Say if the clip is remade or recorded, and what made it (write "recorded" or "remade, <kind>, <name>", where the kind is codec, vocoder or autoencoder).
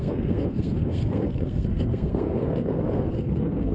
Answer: remade, codec, SNAC